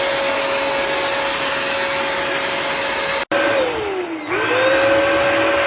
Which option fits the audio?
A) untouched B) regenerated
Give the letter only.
A